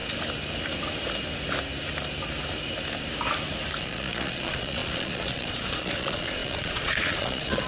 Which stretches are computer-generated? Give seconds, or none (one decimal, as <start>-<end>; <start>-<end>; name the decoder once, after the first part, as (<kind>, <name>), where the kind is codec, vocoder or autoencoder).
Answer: 3.8-7.7 (vocoder, Vocos)